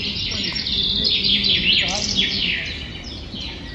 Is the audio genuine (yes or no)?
yes